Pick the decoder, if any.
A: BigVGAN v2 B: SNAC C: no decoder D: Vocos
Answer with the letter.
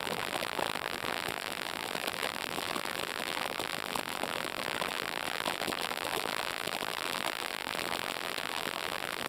A